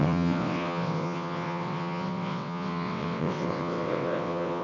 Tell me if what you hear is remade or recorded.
remade